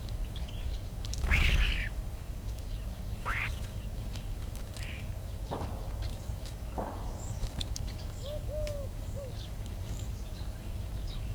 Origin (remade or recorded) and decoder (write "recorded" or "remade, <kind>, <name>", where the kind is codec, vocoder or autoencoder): remade, codec, DAC